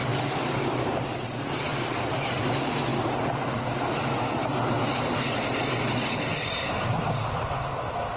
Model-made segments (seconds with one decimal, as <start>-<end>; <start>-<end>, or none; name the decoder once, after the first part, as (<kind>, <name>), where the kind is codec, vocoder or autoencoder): 1.7-2.4 (vocoder, BigVGAN v2); 6.3-7.5